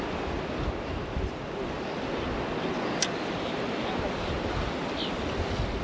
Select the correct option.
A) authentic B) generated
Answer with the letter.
A